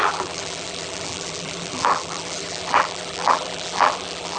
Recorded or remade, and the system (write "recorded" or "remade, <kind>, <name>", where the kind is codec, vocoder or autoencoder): remade, vocoder, BigVGAN v2